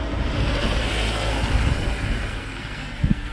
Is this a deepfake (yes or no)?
yes